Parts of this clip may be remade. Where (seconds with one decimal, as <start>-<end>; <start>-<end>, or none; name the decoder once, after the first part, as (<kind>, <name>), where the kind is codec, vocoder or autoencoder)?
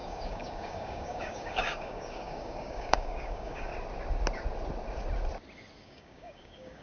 0.0-3.7 (codec, DAC); 5.8-6.8